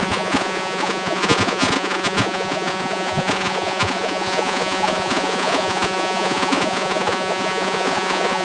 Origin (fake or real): fake